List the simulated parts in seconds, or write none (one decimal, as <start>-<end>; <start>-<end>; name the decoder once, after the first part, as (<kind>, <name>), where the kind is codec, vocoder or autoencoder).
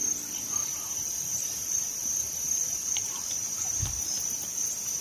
0.7-3.7 (vocoder, BigVGAN v2)